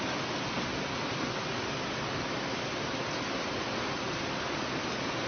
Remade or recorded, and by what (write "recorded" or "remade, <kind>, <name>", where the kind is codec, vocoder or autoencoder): recorded